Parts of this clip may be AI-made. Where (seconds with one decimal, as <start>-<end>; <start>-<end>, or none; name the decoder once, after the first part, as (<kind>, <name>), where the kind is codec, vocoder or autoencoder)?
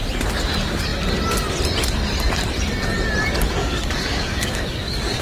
3.6-5.2 (codec, DAC)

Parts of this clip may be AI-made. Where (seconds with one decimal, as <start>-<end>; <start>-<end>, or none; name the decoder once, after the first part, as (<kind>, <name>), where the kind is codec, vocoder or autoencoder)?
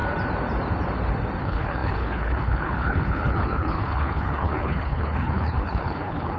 1.4-6.4 (codec, HILCodec)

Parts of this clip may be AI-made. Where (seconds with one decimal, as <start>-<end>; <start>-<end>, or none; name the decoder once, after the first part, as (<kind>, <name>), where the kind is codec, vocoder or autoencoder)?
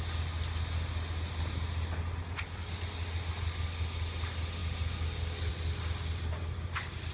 none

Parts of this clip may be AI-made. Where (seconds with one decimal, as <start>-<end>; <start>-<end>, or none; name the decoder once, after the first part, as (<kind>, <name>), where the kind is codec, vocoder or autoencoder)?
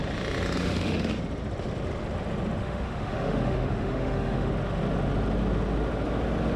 0.6-1.1 (autoencoder, DAC-VAE); 2.6-4.5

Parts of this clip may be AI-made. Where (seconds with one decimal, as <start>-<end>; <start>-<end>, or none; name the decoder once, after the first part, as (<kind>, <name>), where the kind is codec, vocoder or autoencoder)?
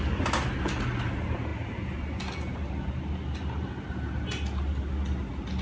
none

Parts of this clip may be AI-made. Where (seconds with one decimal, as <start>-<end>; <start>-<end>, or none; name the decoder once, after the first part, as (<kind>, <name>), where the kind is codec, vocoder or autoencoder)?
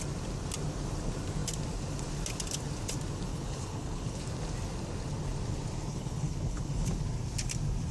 3.3-4.2 (codec, HILCodec); 5.9-6.9